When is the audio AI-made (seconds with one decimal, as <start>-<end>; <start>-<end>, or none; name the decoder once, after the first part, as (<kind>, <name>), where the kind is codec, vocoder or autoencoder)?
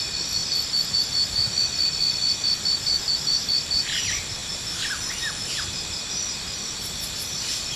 none